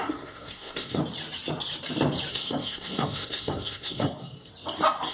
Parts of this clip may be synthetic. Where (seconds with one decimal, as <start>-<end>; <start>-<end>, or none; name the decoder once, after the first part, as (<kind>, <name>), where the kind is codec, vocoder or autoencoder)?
0.0-1.0 (codec, SNAC); 2.3-4.5